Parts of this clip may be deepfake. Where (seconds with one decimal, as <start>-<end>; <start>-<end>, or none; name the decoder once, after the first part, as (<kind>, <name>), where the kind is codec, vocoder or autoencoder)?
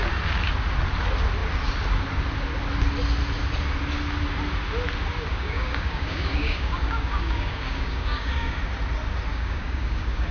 5.3-8.6 (codec, DAC); 9.3-10.3